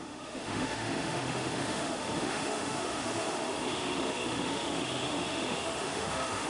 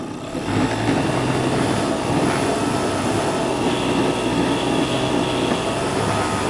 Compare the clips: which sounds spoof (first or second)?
first